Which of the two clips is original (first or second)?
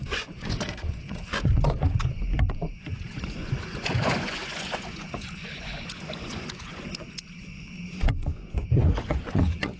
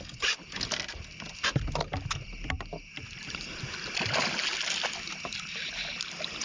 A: second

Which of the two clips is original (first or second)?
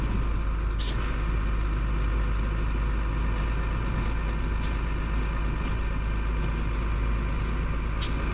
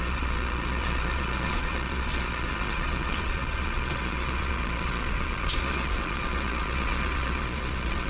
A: first